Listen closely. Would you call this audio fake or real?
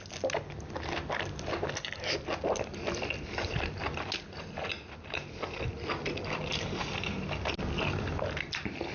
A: real